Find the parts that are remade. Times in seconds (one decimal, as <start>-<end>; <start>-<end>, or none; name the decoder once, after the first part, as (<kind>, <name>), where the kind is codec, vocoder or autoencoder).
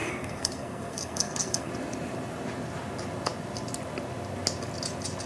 0.0-1.7 (codec, SNAC)